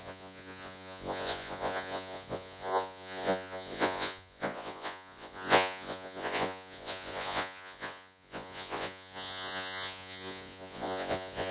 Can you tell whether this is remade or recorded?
remade